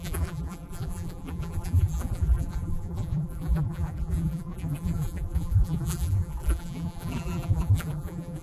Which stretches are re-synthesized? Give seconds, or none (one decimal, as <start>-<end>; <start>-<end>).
0.0-8.4